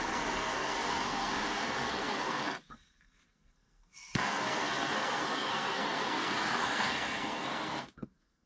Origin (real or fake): fake